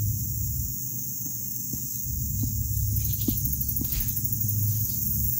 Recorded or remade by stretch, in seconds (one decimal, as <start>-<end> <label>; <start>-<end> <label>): 0.0-2.9 remade; 2.9-5.4 recorded